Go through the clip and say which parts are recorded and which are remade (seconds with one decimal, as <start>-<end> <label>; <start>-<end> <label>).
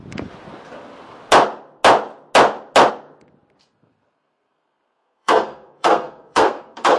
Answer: 0.0-3.6 recorded; 3.6-7.0 remade